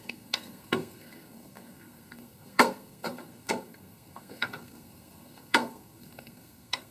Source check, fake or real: fake